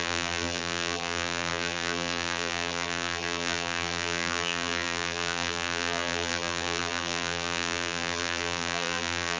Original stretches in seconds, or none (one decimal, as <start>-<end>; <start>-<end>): none